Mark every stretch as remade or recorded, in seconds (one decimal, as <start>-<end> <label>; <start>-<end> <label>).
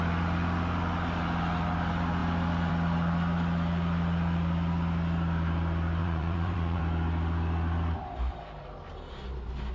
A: 0.0-6.0 recorded; 6.0-6.8 remade; 6.8-9.7 recorded